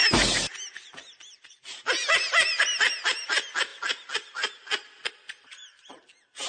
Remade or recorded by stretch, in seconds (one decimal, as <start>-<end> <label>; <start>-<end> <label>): 0.0-6.5 recorded

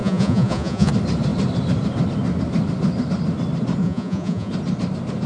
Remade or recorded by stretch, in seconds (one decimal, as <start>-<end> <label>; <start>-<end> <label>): 0.0-0.9 remade; 0.9-3.8 recorded; 3.8-4.5 remade; 4.5-5.3 recorded

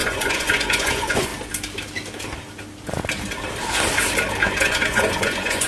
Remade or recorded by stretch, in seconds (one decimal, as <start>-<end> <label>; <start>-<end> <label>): 0.0-1.3 remade; 1.3-4.6 recorded; 4.6-5.7 remade

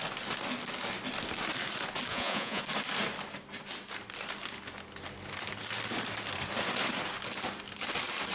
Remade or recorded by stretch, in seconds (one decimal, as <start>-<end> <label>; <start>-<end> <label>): 0.0-2.1 recorded; 2.1-2.6 remade; 2.6-8.3 recorded